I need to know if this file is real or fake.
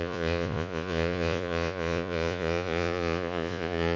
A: fake